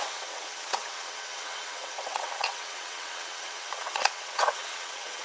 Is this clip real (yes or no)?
no